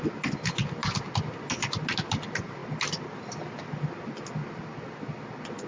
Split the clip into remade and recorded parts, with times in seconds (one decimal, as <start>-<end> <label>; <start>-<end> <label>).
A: 0.0-5.7 recorded